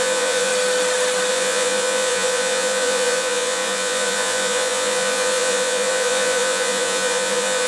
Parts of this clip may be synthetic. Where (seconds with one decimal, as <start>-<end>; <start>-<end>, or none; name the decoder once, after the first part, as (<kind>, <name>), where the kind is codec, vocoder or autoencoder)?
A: 0.0-0.5 (vocoder, Vocos); 1.3-7.7